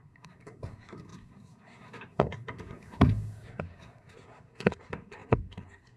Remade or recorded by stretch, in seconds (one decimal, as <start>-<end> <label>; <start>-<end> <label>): 0.0-6.0 remade